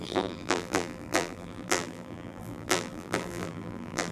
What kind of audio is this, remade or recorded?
remade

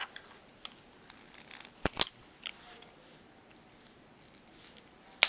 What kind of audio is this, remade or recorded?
recorded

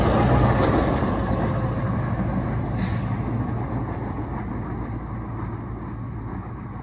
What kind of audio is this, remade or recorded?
recorded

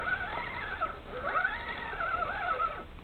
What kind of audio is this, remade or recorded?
recorded